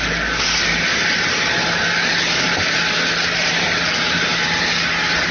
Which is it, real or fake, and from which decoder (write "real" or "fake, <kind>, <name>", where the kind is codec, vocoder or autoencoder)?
real